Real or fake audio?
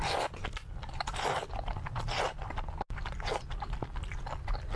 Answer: real